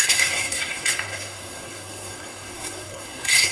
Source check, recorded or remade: remade